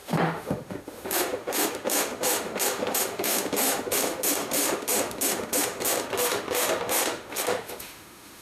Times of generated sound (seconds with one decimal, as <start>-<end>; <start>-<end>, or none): 0.0-8.4